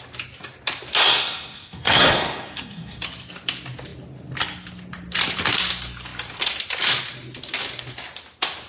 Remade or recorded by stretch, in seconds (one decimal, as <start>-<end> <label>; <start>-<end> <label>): 0.0-1.0 recorded; 1.0-3.0 remade; 3.0-8.7 recorded